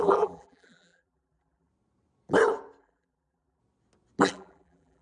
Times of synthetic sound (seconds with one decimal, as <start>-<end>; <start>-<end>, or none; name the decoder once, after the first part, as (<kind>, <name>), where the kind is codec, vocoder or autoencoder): 0.0-1.7 (vocoder, BigVGAN v2); 2.8-3.6; 4.2-5.0